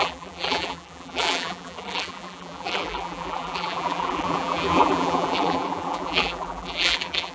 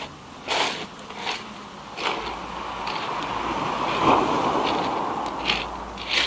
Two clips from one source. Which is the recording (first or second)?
second